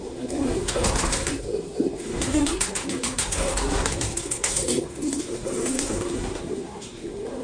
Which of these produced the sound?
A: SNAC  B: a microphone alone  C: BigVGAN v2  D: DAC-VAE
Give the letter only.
A